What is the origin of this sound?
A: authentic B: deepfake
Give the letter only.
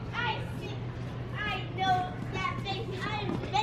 A